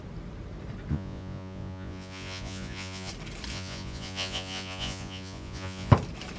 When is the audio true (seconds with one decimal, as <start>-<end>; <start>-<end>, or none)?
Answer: 0.0-0.9; 3.1-3.5; 5.9-6.4